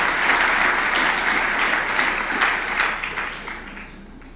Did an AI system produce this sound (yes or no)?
no